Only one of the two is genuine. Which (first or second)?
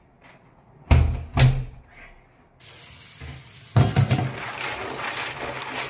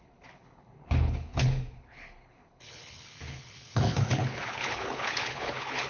first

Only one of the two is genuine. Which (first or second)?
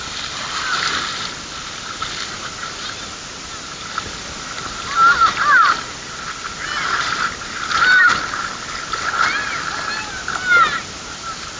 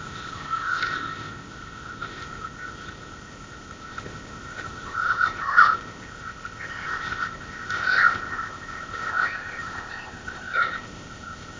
first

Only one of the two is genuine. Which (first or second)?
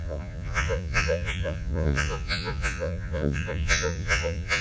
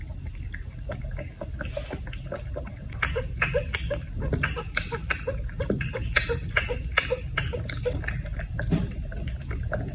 second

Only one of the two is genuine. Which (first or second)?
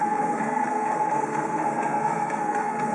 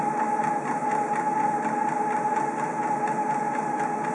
second